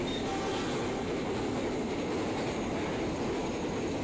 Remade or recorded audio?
recorded